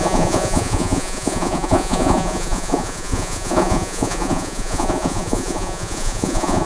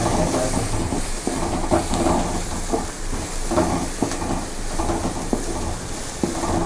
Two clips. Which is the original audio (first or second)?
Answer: second